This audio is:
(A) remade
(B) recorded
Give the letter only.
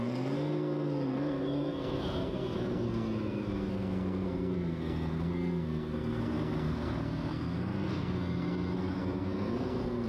A